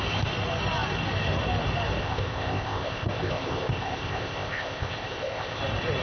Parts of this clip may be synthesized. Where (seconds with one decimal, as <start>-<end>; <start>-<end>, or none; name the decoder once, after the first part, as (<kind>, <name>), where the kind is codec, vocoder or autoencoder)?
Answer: 2.0-5.6 (codec, ZipCodec)